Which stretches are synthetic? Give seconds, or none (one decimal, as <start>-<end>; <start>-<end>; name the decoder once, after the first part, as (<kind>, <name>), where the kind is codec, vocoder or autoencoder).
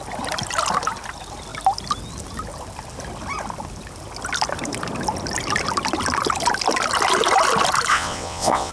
7.9-8.7 (vocoder, WaveNeXt)